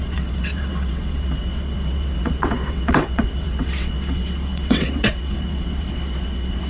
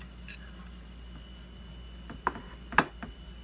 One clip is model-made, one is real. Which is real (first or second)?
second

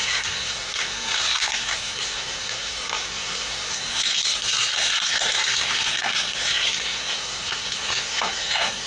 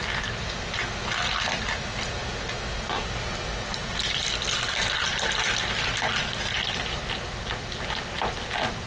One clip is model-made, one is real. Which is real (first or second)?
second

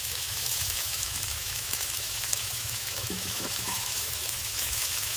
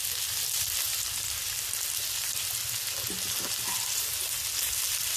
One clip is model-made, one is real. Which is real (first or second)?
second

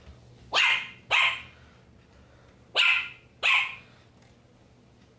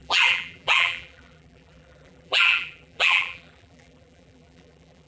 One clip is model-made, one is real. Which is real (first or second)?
first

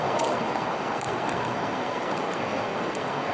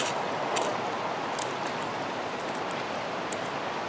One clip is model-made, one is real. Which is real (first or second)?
second